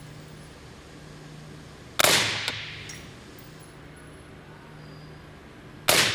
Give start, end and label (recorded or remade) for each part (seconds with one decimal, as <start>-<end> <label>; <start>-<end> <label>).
0.0-6.1 recorded